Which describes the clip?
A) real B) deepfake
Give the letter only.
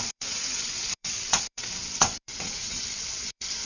B